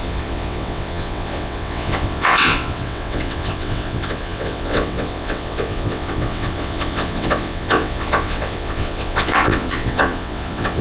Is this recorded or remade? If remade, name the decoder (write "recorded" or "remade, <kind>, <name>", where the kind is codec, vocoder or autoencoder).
remade, vocoder, WaveNeXt